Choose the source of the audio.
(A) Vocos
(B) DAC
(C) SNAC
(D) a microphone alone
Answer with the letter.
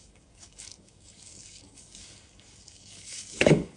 B